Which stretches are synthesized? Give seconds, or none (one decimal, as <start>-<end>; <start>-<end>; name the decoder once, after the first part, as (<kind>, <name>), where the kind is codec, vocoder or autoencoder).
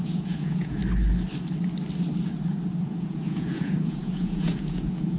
0.0-0.8 (vocoder, Vocos); 2.9-5.2